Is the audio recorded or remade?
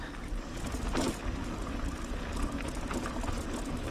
recorded